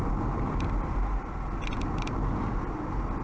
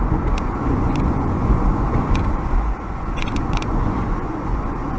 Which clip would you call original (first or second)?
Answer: first